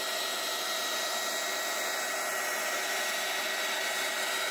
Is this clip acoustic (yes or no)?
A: yes